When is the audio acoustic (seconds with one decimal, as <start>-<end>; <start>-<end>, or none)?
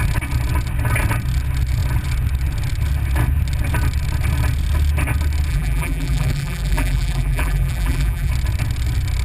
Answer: 0.0-5.5; 8.3-9.2